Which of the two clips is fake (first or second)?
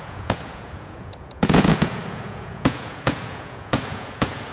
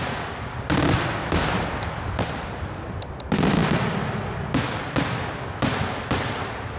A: first